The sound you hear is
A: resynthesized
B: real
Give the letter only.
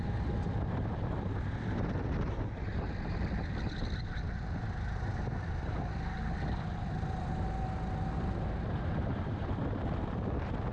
B